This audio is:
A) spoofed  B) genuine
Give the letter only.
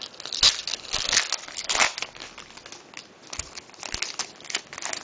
B